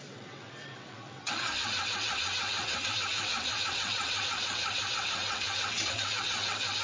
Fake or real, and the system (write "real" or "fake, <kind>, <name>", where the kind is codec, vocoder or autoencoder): fake, vocoder, WaveNeXt